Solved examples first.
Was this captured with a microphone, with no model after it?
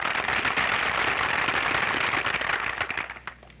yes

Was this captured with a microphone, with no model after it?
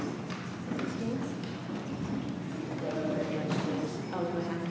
yes